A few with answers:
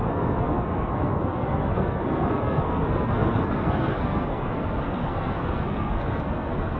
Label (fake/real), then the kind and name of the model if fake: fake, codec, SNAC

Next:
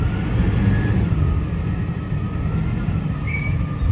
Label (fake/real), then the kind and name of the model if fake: real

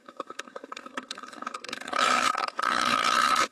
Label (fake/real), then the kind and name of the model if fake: fake, codec, SNAC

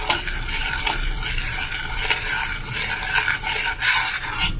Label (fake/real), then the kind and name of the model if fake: real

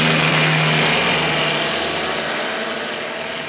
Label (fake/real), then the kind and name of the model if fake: real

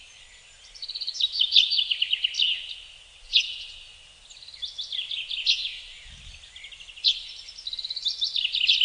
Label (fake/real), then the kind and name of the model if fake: real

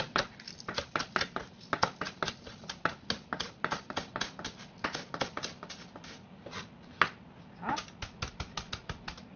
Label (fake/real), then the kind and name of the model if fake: real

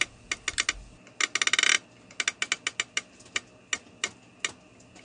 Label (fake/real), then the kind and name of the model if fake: real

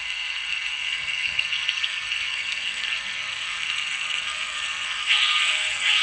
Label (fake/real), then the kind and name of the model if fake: fake, codec, SNAC